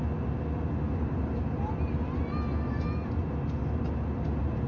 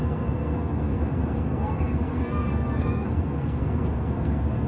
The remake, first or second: second